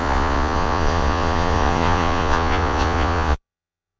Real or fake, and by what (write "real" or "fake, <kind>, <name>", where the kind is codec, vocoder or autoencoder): fake, vocoder, Vocos